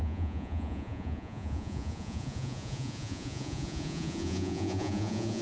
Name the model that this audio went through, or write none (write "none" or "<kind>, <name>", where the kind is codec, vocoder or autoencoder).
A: vocoder, Vocos